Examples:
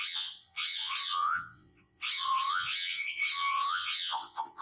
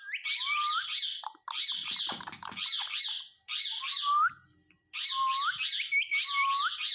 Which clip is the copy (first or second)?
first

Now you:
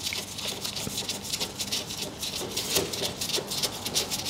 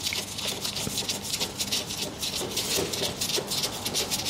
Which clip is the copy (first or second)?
first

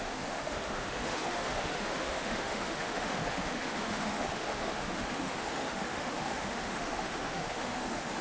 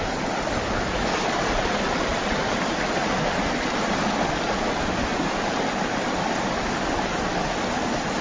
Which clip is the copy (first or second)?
first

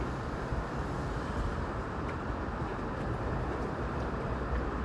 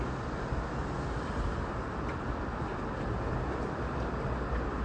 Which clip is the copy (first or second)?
first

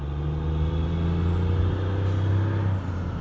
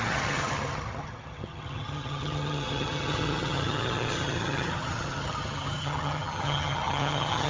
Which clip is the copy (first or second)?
second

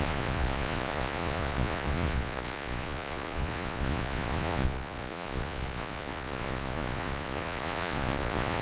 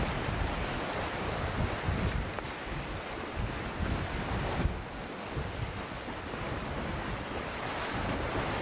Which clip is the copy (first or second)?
first